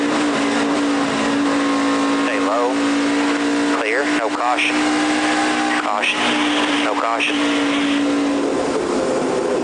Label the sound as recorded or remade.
recorded